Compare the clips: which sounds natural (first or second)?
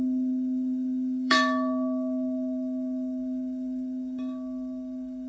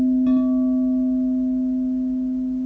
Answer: second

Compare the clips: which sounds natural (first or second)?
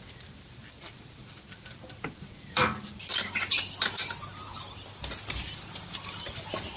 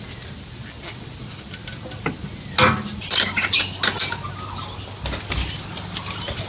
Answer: second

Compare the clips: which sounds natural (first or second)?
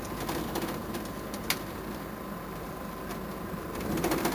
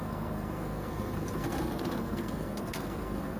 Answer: first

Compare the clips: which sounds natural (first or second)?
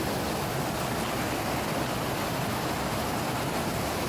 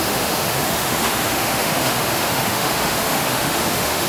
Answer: first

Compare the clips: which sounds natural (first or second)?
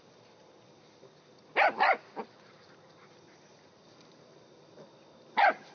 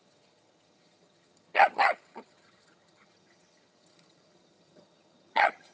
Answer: first